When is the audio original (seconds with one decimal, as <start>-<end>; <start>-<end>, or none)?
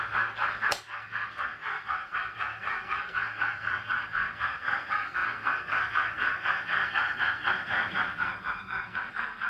none